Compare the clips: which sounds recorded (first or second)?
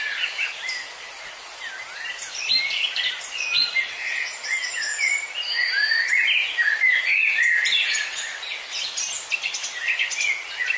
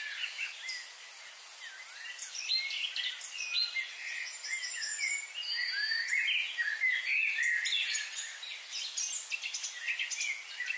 second